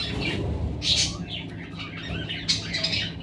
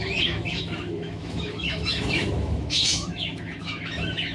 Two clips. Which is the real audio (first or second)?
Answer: first